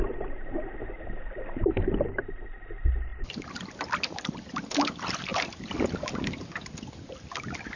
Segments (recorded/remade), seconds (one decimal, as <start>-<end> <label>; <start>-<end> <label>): 0.0-7.8 recorded